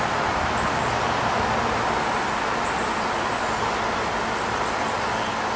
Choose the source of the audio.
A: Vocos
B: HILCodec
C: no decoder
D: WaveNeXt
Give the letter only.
C